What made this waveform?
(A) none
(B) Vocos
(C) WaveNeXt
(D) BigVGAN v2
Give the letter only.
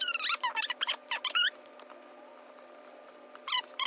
A